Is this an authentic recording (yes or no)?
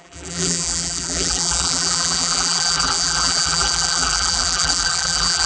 no